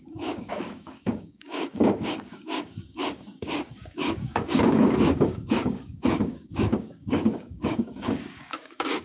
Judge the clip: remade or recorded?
remade